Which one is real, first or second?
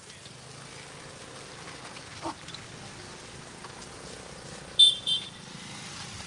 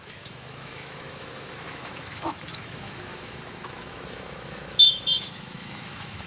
first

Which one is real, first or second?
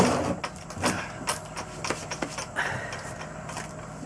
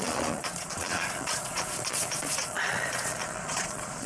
first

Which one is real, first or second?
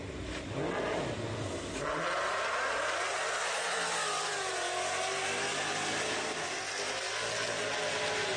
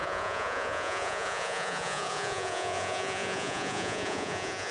first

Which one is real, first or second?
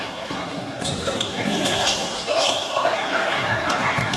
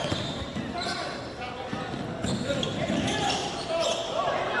second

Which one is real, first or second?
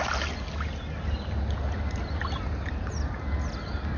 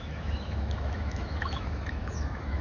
first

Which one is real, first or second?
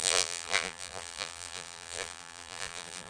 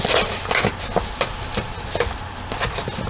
second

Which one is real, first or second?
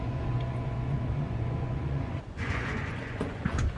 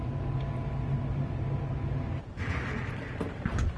second